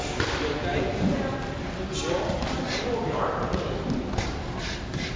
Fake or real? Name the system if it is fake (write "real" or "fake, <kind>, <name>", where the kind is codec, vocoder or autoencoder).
real